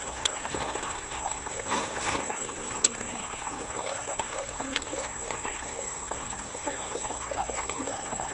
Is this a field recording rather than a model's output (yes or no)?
no